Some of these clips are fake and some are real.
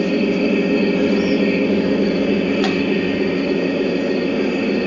real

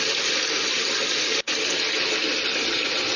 real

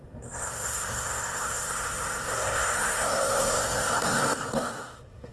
fake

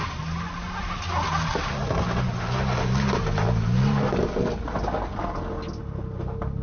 real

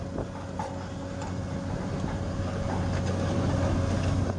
real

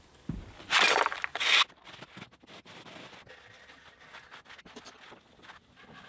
real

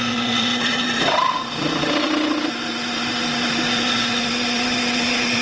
real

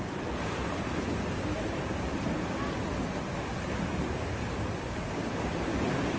real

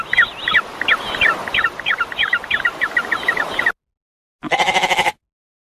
real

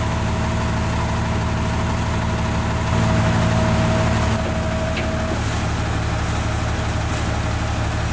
real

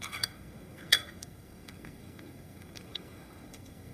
fake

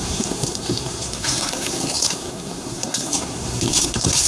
fake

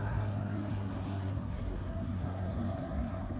fake